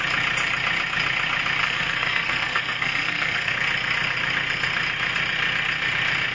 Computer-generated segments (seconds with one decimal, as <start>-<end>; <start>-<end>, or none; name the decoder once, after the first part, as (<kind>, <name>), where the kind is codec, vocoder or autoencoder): 1.6-3.5 (codec, SNAC)